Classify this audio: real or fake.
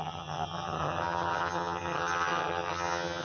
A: fake